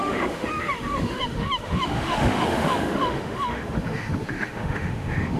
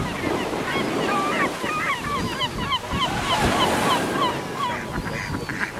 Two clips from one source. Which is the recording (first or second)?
second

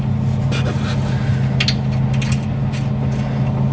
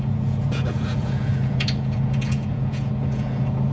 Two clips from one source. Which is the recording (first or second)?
first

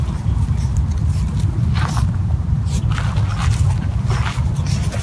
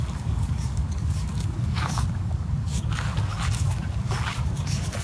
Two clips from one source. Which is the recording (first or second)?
first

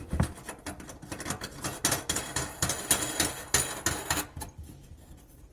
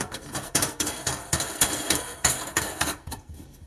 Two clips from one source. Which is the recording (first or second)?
first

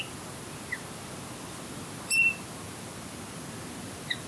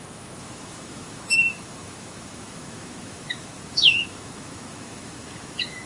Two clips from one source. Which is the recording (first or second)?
first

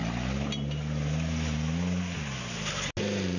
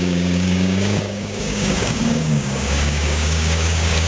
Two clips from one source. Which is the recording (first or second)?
first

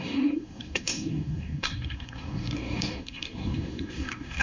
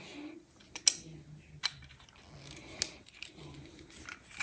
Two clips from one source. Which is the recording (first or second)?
second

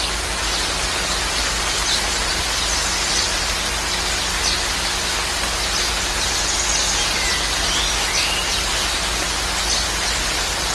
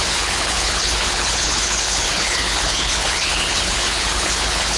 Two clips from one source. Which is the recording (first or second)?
first